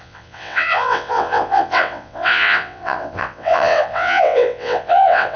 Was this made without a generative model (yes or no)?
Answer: no